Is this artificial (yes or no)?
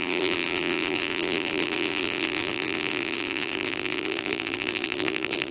yes